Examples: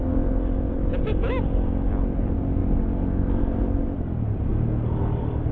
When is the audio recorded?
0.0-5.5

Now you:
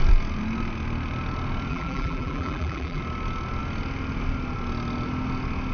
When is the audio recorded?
0.0-1.7; 3.0-5.7